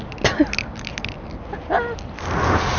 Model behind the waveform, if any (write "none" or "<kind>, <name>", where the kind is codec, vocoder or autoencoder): none